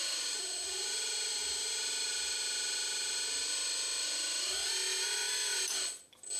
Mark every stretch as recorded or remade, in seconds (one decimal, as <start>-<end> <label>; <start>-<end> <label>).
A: 0.0-6.4 recorded